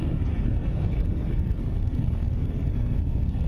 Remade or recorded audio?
remade